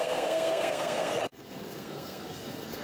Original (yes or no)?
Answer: no